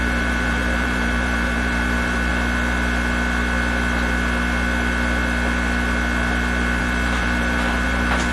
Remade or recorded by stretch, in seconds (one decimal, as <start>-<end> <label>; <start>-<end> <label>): 0.0-2.3 remade; 2.3-6.8 recorded; 6.8-8.3 remade

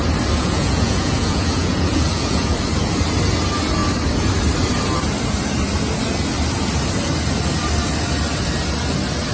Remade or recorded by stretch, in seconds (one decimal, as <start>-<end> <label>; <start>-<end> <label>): 0.0-0.4 recorded; 0.4-2.5 remade; 2.5-9.3 recorded

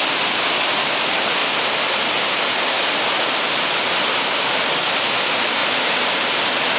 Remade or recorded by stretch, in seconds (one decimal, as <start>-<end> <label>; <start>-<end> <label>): 0.0-5.6 remade; 5.6-6.8 recorded

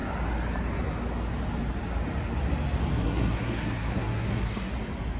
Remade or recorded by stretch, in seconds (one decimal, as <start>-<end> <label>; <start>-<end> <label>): 0.0-2.9 recorded; 2.9-4.7 remade; 4.7-5.2 recorded

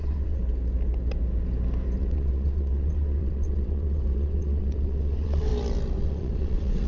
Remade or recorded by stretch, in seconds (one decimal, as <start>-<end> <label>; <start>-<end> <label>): 0.0-0.4 remade; 0.4-2.0 recorded; 2.0-5.5 remade; 5.5-6.0 recorded; 6.0-6.9 remade

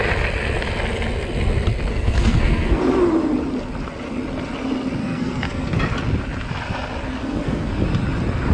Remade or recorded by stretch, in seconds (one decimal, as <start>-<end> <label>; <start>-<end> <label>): 0.0-1.9 recorded; 1.9-2.8 remade; 2.8-5.0 recorded; 5.0-5.8 remade; 5.8-7.2 recorded; 7.2-7.7 remade; 7.7-8.5 recorded

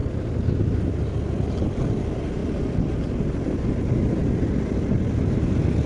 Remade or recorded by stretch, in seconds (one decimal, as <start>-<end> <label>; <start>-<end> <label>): 0.0-2.4 recorded; 2.4-3.1 remade; 3.1-5.9 recorded